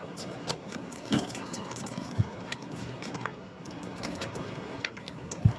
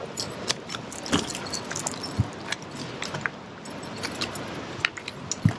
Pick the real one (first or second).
second